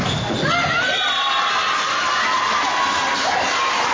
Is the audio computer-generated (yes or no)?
no